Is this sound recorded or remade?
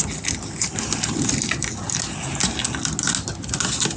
recorded